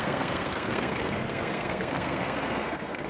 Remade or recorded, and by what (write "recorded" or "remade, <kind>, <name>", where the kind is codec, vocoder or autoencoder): remade, codec, SNAC